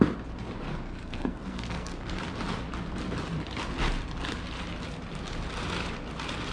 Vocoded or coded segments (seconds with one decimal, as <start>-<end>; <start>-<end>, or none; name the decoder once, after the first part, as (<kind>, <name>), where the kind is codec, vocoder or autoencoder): 0.7-2.2 (codec, SNAC)